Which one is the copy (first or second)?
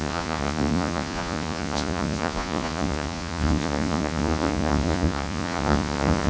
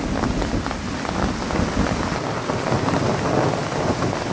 first